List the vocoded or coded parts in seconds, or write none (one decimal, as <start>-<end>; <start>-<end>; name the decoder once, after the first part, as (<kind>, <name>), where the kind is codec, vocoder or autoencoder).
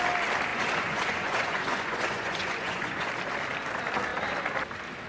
0.5-3.1 (vocoder, Vocos)